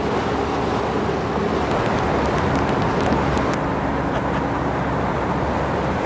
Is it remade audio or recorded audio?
recorded